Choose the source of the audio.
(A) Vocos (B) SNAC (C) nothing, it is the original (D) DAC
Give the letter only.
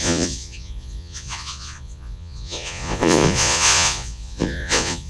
A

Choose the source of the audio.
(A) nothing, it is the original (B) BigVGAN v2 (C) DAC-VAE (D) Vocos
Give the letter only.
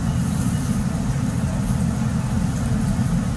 A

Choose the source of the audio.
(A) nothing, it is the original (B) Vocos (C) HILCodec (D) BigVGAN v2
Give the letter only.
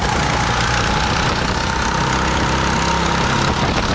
A